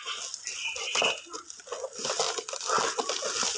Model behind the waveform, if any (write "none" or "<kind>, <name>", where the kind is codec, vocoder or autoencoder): none